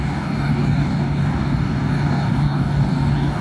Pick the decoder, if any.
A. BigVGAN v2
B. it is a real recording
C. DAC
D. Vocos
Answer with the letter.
C